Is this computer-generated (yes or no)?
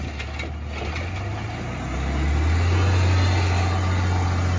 no